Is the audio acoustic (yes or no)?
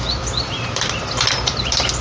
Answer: yes